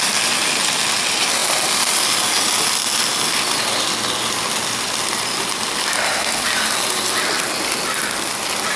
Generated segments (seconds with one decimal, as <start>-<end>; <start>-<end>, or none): none